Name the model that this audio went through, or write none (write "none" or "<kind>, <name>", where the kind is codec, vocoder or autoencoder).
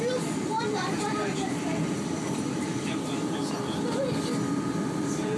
none